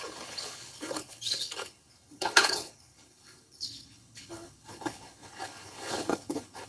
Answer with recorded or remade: remade